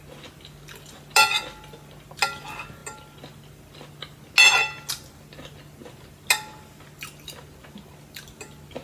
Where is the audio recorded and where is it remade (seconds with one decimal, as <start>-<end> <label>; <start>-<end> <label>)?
0.0-8.8 recorded